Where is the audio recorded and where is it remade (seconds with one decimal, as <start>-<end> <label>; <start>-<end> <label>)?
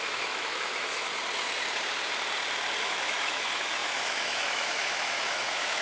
0.0-1.1 remade; 1.1-2.8 recorded; 2.8-5.8 remade